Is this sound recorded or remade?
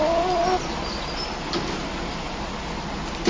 recorded